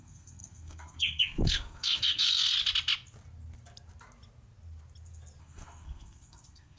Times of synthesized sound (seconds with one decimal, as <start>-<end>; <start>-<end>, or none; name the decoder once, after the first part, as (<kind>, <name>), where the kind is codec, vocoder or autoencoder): 0.0-2.5 (codec, SNAC); 5.4-6.8